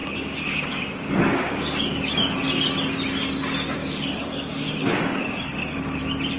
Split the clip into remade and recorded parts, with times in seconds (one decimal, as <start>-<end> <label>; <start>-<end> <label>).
0.0-2.1 remade; 2.1-3.8 recorded; 3.8-6.0 remade; 6.0-6.4 recorded